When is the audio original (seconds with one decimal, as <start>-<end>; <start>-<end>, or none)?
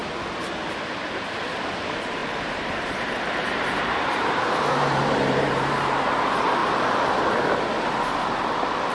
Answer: 0.0-2.2; 6.1-6.6; 7.2-8.9